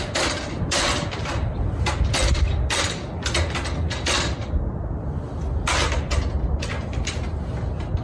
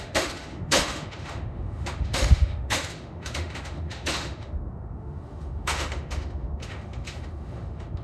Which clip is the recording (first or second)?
first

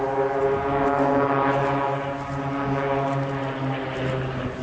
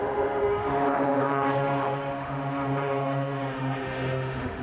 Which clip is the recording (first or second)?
first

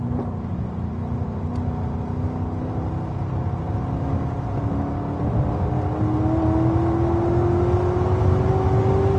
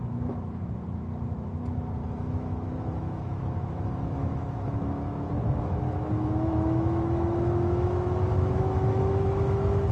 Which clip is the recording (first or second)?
first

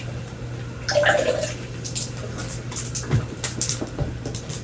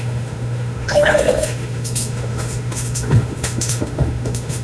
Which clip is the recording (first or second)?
first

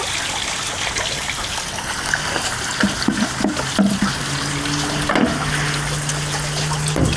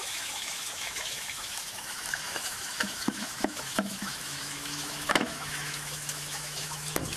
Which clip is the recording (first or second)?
first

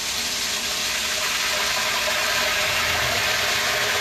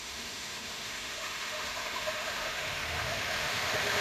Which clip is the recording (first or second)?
first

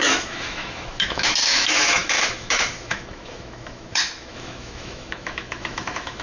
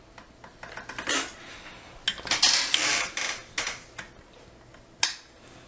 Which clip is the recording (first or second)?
second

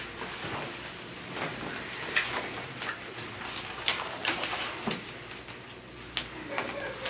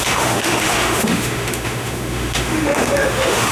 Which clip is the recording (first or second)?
first